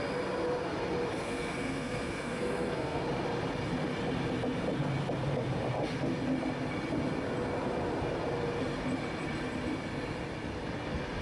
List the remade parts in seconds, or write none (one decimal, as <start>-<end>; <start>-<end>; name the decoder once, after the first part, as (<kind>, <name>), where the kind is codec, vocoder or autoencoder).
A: 1.2-3.0 (codec, SNAC)